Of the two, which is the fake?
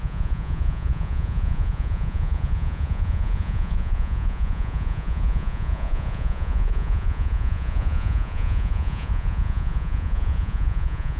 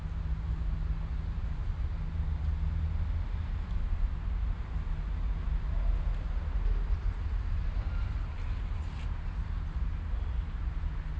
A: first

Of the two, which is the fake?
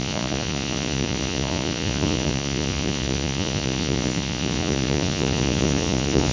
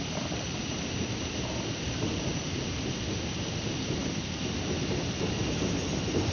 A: first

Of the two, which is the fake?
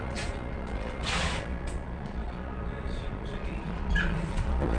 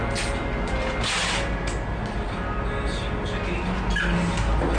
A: first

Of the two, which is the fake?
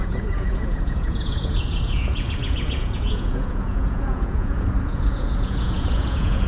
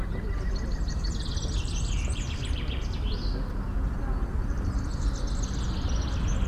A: first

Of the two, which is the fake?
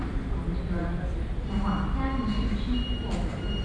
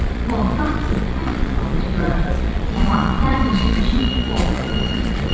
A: second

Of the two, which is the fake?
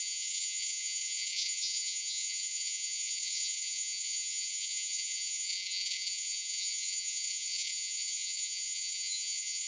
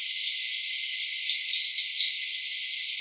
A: first